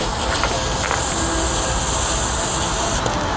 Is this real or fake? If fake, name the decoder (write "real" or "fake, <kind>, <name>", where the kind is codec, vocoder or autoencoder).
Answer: real